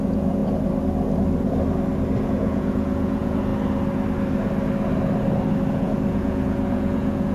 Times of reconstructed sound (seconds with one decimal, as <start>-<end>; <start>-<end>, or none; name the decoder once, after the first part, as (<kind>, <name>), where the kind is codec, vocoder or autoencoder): 0.0-0.4 (vocoder, Vocos); 2.2-3.5; 5.7-7.3